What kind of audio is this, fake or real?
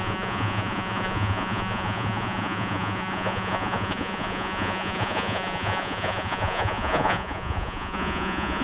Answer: fake